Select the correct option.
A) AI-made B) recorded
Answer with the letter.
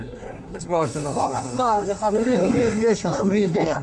A